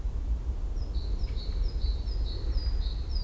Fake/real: real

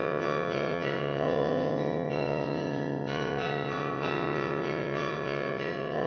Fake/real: fake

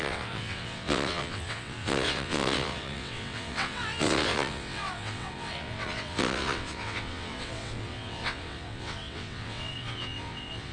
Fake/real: fake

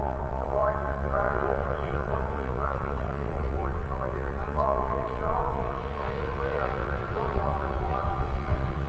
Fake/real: fake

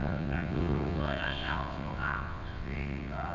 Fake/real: fake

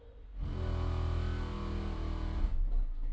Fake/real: real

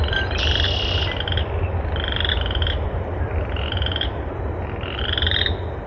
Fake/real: real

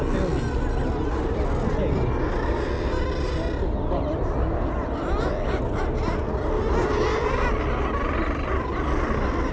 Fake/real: real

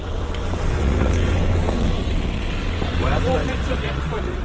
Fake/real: fake